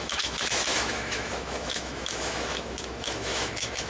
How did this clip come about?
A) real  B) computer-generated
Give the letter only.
B